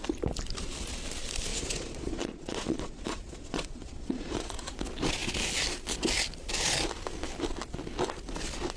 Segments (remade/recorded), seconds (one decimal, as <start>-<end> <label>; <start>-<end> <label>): 0.0-1.5 recorded; 1.5-4.7 remade; 4.7-8.8 recorded